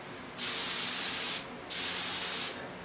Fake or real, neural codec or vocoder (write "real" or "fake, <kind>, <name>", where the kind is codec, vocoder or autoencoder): real